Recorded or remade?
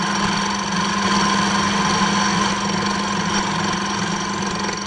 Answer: recorded